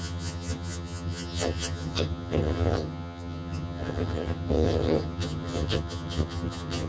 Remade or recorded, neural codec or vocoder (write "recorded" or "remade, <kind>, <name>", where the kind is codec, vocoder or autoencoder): remade, vocoder, HiFi-GAN